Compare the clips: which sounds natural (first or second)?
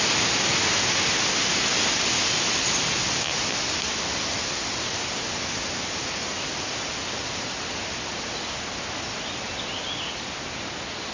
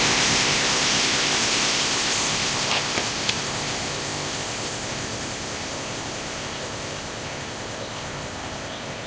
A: first